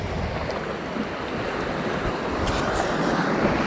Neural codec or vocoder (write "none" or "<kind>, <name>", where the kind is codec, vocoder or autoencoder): none